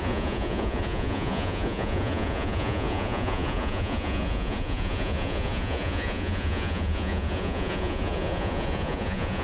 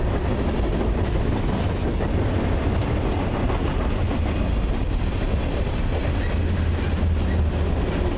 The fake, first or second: first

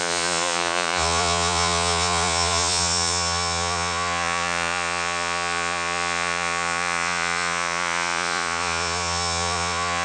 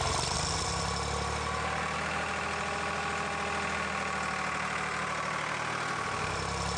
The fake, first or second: first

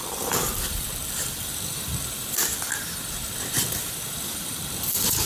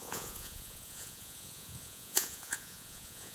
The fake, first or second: second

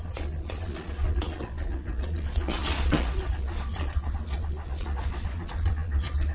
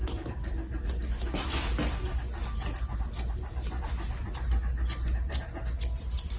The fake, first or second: first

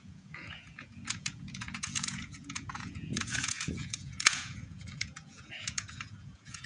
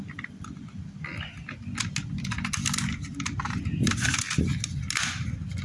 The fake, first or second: first